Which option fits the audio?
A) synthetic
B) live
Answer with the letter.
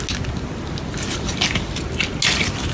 B